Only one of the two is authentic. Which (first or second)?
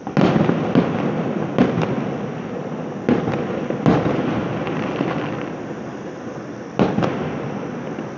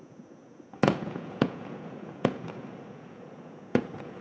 first